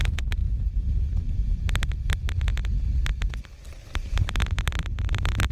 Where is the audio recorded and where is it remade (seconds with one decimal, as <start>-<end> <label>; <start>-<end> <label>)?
0.0-0.4 recorded; 0.4-1.7 remade; 1.7-5.5 recorded